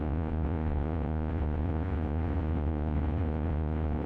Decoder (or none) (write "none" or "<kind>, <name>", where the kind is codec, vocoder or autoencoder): vocoder, Vocos